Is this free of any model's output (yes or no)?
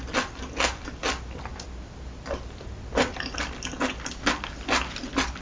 yes